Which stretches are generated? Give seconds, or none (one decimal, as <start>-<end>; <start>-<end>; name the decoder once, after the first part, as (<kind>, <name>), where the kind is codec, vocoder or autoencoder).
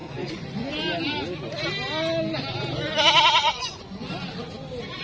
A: 0.0-0.7 (vocoder, Vocos); 3.4-4.1